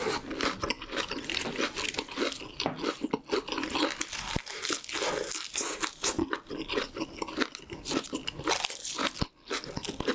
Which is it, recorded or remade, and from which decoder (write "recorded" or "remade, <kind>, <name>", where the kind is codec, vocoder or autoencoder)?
recorded